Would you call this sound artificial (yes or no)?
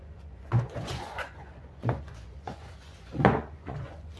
yes